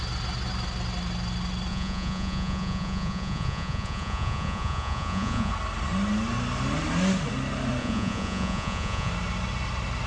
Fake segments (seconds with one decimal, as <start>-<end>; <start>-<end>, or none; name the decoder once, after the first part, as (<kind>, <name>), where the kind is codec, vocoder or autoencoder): 1.7-5.5 (vocoder, Vocos); 7.8-9.1